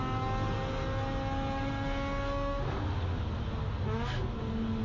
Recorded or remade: recorded